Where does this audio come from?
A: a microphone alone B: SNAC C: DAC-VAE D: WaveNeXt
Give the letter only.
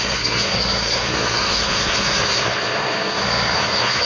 B